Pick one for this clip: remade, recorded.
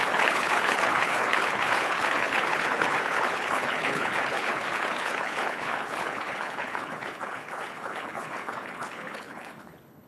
remade